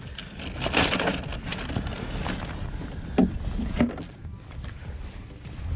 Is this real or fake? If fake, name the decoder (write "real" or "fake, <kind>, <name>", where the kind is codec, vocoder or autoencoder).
real